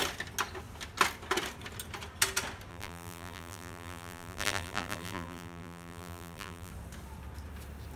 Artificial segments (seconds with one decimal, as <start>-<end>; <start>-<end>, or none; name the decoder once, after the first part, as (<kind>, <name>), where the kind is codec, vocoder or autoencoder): 2.7-6.7 (vocoder, BigVGAN v2)

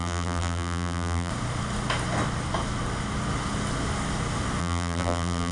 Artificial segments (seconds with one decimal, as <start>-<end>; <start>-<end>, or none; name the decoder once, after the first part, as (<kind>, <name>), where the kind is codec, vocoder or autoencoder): 0.0-1.3 (vocoder, BigVGAN v2); 4.6-5.5